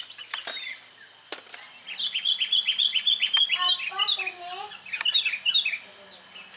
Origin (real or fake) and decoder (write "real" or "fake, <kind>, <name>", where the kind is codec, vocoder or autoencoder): real